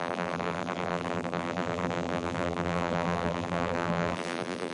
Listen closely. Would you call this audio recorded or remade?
remade